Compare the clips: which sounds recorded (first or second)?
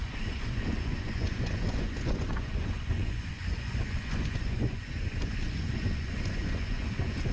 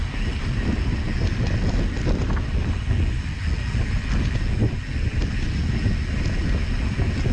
second